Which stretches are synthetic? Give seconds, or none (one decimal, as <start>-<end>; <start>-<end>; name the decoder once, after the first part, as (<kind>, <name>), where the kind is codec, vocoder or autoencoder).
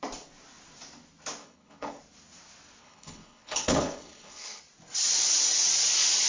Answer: 1.4-2.0 (codec, HILCodec); 2.8-4.6